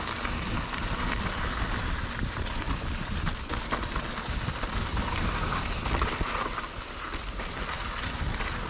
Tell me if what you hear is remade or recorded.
recorded